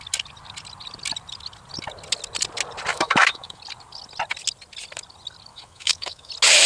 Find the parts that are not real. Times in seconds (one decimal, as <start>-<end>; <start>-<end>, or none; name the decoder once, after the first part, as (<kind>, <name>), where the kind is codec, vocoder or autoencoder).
2.9-3.6 (autoencoder, DAC-VAE); 5.5-6.3